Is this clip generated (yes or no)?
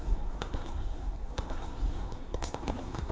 yes